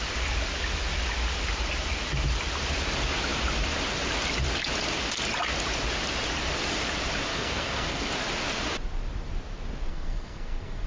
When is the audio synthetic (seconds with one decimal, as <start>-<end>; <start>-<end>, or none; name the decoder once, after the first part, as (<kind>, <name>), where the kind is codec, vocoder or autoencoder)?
7.3-8.1 (codec, SNAC); 9.9-10.9